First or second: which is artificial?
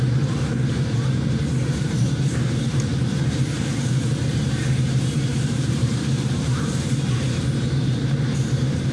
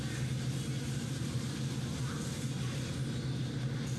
first